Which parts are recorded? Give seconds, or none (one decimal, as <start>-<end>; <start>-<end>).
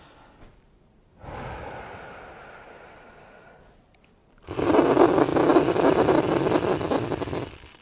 0.0-5.3; 6.1-7.8